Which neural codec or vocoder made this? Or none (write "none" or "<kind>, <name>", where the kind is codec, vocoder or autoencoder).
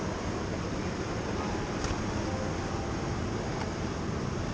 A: none